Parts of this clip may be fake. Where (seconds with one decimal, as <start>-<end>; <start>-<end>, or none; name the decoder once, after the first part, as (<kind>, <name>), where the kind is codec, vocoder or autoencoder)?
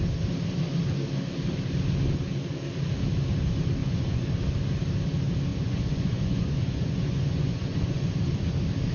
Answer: 3.8-4.3 (vocoder, Vocos); 5.5-8.2